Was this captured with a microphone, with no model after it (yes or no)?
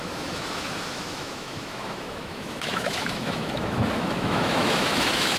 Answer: no